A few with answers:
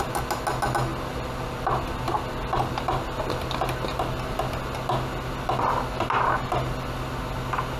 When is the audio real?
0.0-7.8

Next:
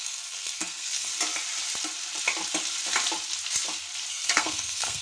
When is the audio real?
1.1-4.1

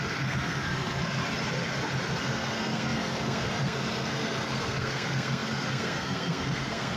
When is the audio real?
1.2-2.2

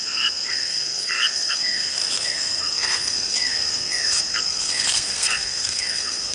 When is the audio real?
none

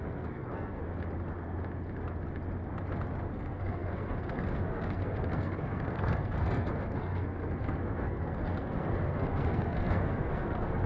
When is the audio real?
0.8-3.2